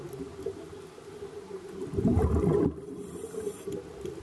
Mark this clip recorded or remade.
recorded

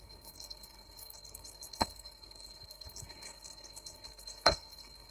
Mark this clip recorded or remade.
remade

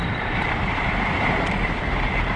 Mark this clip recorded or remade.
remade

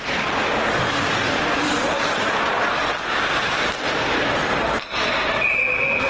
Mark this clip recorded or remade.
recorded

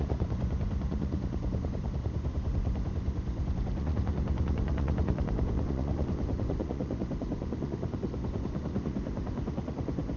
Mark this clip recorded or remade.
remade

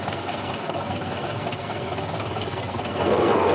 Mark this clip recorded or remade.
remade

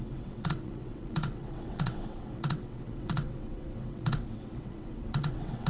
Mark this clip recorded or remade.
remade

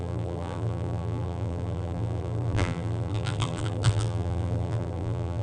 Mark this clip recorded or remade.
remade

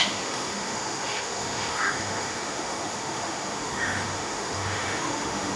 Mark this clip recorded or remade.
remade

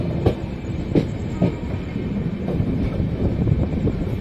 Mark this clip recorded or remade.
remade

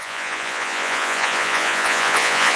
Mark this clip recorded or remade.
remade